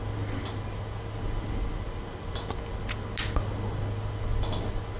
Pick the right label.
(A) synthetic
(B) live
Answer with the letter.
B